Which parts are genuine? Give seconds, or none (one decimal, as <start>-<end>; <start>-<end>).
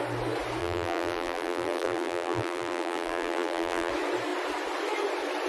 0.0-0.6; 3.9-5.5